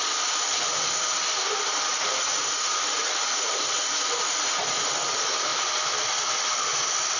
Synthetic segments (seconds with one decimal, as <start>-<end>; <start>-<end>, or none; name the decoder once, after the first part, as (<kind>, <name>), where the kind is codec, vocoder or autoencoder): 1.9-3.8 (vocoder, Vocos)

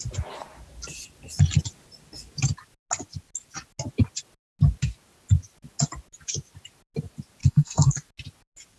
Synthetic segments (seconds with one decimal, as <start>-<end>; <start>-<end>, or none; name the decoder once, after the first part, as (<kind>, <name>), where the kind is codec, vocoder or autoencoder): 7.4-7.9 (codec, SNAC)

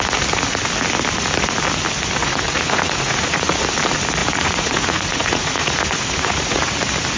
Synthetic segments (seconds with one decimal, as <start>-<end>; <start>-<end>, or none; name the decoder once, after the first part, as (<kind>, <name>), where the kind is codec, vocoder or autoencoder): 2.2-3.6 (vocoder, Vocos); 4.2-6.8

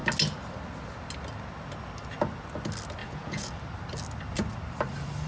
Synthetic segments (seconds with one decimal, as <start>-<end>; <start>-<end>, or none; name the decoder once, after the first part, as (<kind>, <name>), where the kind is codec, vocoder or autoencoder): 3.0-3.5 (vocoder, Vocos)